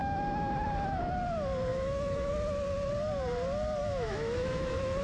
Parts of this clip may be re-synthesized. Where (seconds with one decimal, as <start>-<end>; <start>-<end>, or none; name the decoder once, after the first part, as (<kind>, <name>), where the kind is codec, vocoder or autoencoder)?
0.0-0.5 (autoencoder, DAC-VAE); 1.7-2.3; 3.8-5.0